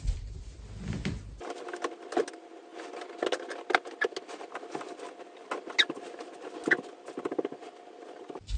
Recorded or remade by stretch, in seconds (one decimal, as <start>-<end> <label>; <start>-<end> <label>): 0.0-8.6 recorded